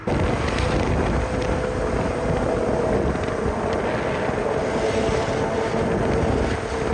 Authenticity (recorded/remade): recorded